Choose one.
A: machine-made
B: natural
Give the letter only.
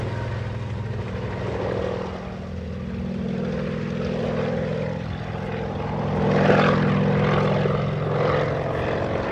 B